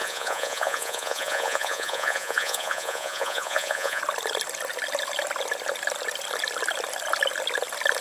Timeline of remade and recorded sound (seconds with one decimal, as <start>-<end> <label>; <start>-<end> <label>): 0.0-4.0 remade; 4.0-8.0 recorded